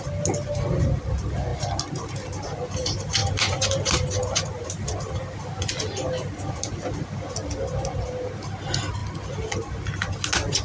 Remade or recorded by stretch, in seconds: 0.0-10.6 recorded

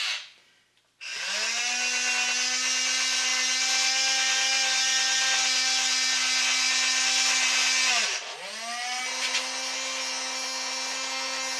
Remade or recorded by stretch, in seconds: 0.0-11.6 recorded

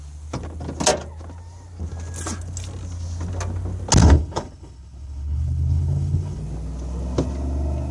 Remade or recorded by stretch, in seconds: 0.0-4.0 recorded; 4.0-6.4 remade; 6.4-7.9 recorded

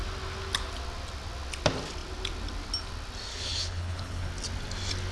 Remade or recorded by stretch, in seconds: 0.0-3.3 recorded; 3.3-4.3 remade; 4.3-5.1 recorded

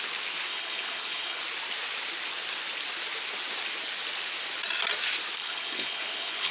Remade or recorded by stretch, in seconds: 0.0-0.5 recorded; 0.5-1.4 remade; 1.4-5.4 recorded; 5.4-6.5 remade

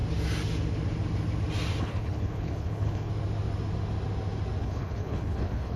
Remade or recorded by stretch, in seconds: 0.0-1.8 recorded; 1.8-3.1 remade; 3.1-4.6 recorded; 4.6-5.8 remade

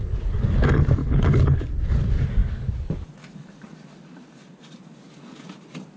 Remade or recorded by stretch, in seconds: 0.0-1.0 recorded; 1.0-1.7 remade; 1.7-6.0 recorded

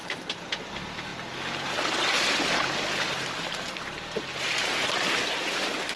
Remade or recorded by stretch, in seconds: 0.0-6.0 recorded